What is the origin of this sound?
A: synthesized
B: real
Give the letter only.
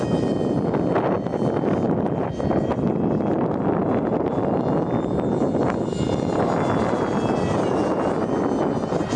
B